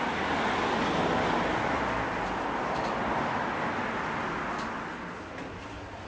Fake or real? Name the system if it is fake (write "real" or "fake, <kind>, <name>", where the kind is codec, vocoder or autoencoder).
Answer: real